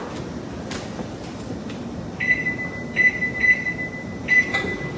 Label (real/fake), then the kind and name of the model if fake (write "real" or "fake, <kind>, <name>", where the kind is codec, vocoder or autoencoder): real